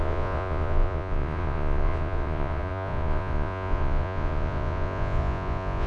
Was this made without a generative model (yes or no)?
no